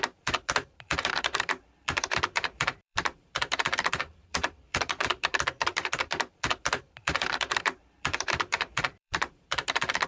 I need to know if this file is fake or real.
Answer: fake